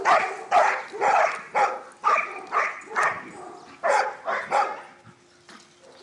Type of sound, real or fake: real